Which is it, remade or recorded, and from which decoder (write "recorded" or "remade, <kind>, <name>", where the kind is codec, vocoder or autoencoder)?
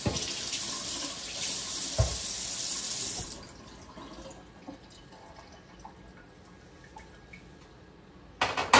recorded